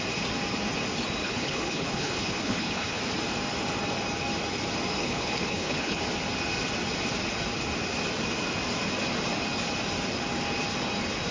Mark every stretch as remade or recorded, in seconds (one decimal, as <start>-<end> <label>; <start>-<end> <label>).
0.0-1.2 recorded; 1.2-3.0 remade; 3.0-5.0 recorded; 5.0-6.0 remade; 6.0-11.3 recorded